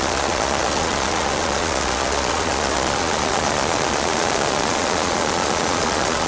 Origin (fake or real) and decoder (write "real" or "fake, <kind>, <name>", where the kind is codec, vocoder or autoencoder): fake, vocoder, Vocos